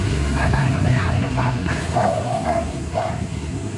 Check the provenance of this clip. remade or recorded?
remade